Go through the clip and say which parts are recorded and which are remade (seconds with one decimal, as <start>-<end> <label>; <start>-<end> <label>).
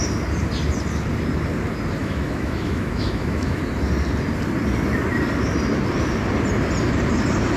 0.0-2.0 recorded; 2.0-3.6 remade; 3.6-7.6 recorded